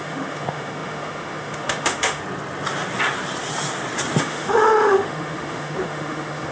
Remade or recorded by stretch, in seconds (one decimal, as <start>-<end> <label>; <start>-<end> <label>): 0.0-2.2 remade; 2.2-4.2 recorded; 4.2-6.5 remade